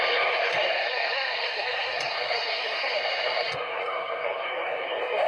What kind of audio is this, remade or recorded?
remade